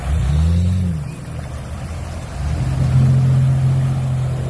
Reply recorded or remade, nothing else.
recorded